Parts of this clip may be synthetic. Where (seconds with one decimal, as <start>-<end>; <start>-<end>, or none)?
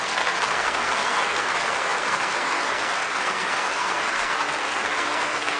0.0-5.6